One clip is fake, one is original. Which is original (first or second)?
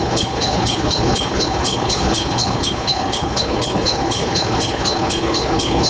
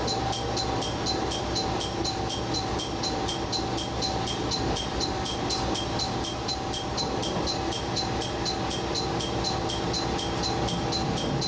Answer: second